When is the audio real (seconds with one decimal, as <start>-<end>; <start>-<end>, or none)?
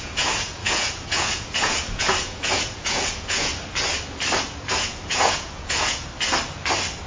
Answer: 3.5-4.7; 6.1-7.1